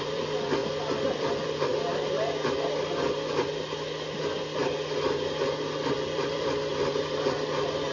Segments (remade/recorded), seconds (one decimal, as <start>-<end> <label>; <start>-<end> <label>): 0.0-0.6 remade; 0.6-1.2 recorded; 1.2-1.7 remade; 1.7-5.9 recorded; 5.9-6.7 remade; 6.7-7.9 recorded